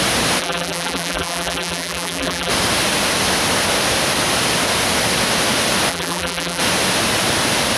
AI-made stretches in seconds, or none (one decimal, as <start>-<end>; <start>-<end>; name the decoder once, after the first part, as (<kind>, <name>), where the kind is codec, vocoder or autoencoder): 0.4-2.5 (vocoder, BigVGAN v2); 5.9-6.6